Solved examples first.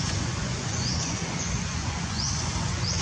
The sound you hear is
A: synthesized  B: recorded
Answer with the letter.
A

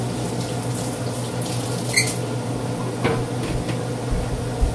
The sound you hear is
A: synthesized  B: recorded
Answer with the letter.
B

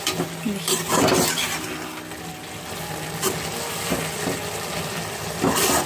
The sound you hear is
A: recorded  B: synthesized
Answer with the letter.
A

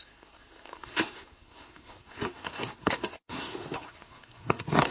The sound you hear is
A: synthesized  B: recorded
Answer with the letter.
A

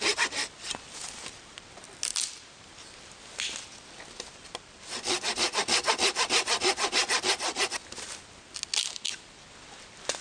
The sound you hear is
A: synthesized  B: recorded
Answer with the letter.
B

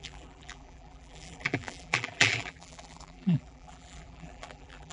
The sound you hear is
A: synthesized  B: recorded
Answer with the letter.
A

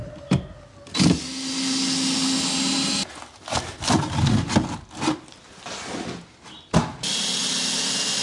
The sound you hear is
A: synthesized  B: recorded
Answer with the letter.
B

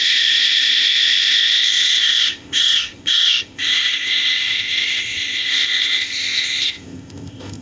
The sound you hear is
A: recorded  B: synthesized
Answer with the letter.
B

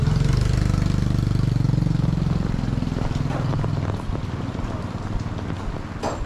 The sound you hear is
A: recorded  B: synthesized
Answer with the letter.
A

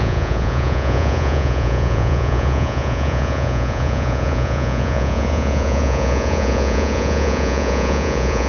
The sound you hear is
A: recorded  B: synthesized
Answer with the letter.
B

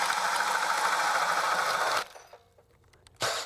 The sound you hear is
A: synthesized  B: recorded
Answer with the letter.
B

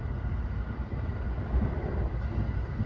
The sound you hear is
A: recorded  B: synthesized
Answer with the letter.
A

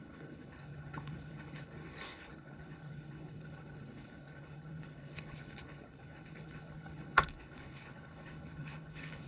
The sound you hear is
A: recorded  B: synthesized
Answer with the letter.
B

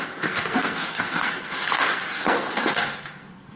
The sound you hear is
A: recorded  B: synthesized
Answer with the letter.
B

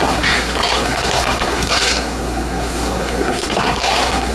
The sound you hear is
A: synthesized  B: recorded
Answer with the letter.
A